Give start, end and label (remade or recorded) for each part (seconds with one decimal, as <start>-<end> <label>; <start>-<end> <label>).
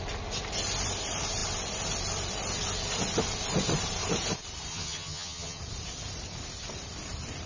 0.0-4.7 recorded; 4.7-5.6 remade; 5.6-7.5 recorded